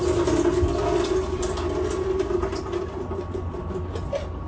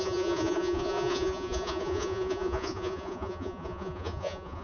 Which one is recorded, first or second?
first